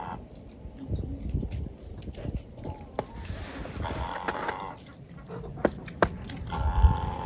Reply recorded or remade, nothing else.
recorded